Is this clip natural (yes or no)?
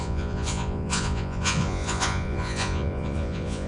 no